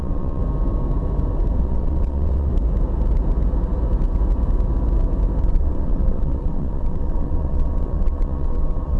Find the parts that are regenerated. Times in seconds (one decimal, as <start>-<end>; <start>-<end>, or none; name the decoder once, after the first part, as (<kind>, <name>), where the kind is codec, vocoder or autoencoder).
0.0-0.4 (vocoder, WaveNeXt); 1.6-2.5; 5.4-9.0